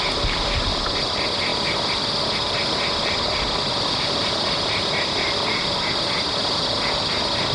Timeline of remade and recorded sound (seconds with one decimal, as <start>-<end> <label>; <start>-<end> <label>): 0.0-7.5 recorded